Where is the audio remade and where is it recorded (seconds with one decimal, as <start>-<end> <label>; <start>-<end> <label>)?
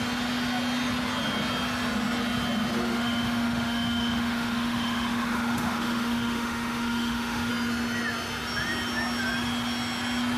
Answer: 0.0-2.9 recorded; 2.9-7.5 remade; 7.5-10.4 recorded